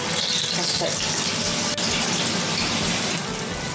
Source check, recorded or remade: recorded